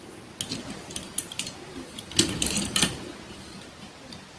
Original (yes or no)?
no